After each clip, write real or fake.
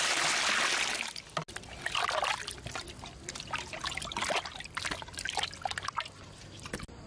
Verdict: real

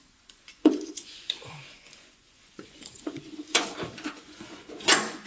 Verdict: fake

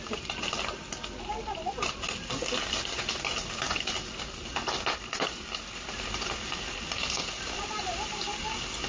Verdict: real